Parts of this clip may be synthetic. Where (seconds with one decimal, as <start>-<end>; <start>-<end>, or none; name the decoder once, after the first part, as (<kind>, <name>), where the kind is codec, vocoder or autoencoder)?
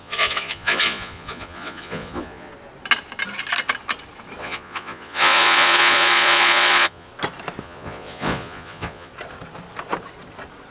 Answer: 0.0-2.5 (vocoder, Vocos); 4.4-7.1; 7.6-9.1